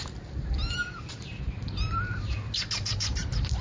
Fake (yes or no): no